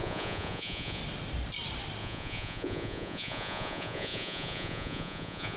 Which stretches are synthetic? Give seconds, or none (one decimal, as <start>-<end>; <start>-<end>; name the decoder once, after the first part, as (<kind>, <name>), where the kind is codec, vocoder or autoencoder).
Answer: 0.0-1.0 (vocoder, Vocos); 2.0-5.6